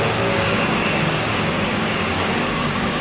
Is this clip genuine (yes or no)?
no